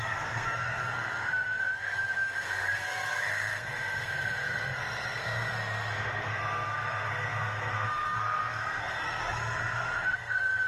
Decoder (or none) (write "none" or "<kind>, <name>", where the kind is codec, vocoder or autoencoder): codec, SNAC